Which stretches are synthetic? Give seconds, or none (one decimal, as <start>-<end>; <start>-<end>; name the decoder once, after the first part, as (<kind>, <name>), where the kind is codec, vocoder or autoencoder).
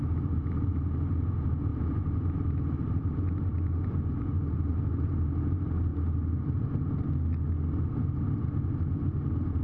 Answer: 0.0-5.9 (vocoder, BigVGAN v2); 8.7-9.6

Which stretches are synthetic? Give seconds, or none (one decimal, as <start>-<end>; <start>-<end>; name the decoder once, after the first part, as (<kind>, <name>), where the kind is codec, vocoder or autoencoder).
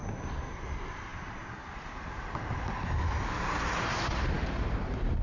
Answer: 0.0-1.1 (vocoder, BigVGAN v2); 4.0-5.2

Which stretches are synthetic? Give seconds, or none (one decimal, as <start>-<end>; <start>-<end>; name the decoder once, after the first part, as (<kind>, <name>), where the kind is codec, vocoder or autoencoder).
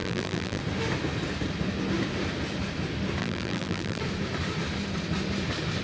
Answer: 0.0-0.6 (vocoder, BigVGAN v2); 3.2-4.0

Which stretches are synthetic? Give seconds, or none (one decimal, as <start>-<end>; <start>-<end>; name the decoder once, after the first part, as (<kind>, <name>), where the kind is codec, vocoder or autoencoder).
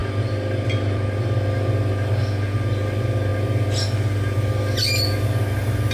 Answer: none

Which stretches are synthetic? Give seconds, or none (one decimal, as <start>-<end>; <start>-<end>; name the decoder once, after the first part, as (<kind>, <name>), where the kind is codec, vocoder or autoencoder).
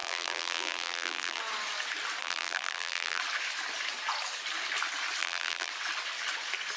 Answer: 0.0-1.4 (vocoder, BigVGAN v2); 2.2-3.2; 5.2-5.7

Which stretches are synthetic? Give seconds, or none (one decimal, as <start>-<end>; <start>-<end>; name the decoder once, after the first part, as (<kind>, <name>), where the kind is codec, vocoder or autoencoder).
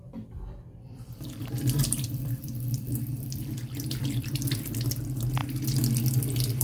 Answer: 0.0-5.4 (vocoder, BigVGAN v2)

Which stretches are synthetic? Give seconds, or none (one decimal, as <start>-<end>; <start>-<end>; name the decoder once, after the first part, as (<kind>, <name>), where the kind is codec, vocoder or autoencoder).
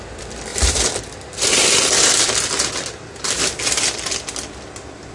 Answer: 0.5-3.6 (vocoder, BigVGAN v2)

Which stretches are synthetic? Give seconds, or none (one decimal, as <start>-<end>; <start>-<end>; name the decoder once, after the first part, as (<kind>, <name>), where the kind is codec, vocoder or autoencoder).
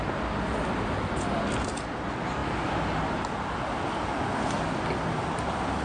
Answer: none